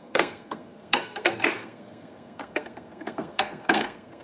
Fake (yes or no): yes